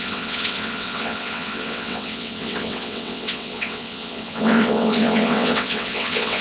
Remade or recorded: remade